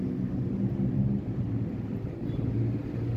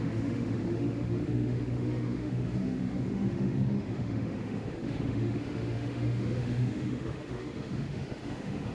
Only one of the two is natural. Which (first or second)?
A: first